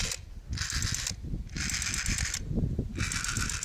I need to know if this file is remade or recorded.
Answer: recorded